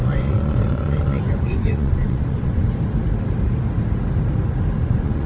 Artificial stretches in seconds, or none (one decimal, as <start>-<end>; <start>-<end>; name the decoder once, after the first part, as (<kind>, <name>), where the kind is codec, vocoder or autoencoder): 0.0-2.6 (vocoder, Vocos); 4.8-5.3